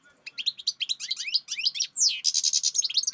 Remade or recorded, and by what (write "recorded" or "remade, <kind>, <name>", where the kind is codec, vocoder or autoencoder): recorded